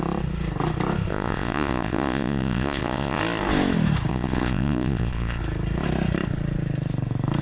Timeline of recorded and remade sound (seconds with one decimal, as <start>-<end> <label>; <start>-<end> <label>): 0.0-1.1 recorded; 1.1-3.2 remade; 3.2-4.1 recorded; 4.1-5.4 remade; 5.4-7.4 recorded